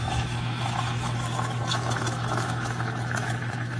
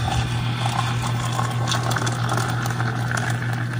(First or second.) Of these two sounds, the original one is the second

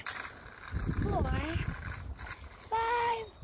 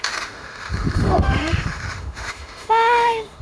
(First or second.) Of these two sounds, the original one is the first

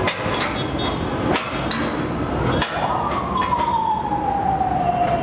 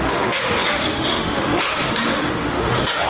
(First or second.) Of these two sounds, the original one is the first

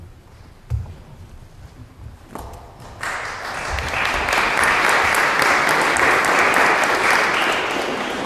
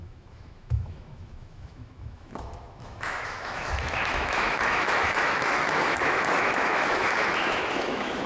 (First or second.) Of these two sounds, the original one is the first